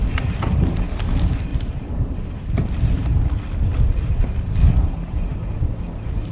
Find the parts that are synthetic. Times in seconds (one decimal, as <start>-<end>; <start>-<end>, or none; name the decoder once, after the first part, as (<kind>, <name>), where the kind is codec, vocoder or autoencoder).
1.5-3.4 (vocoder, BigVGAN v2)